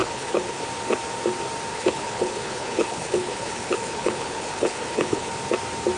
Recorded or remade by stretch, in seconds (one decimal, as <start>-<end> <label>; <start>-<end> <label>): 0.0-0.6 remade; 0.6-1.7 recorded; 1.7-5.3 remade; 5.3-6.0 recorded